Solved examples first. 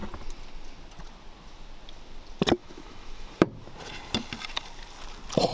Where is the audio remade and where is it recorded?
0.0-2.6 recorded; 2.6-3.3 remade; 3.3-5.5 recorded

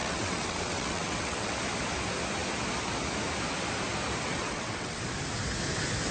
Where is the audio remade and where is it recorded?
0.0-1.5 remade; 1.5-4.3 recorded; 4.3-5.0 remade; 5.0-6.1 recorded

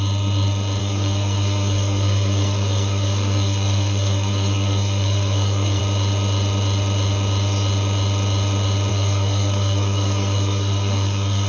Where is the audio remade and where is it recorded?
0.0-0.8 recorded; 0.8-5.8 remade; 5.8-8.9 recorded; 8.9-11.5 remade

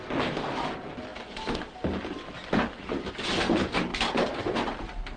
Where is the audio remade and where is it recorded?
0.0-5.2 recorded